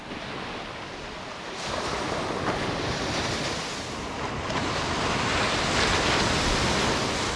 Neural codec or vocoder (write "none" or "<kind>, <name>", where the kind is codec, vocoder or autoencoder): none